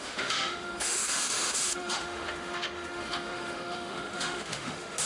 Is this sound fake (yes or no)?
yes